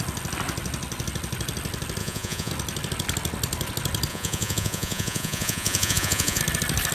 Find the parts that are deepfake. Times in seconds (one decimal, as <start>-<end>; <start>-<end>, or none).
2.0-2.5; 4.1-6.4